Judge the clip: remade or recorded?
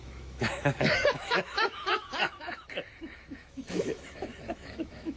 remade